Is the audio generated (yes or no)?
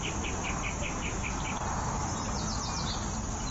no